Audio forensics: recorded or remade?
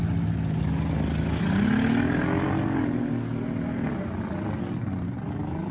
recorded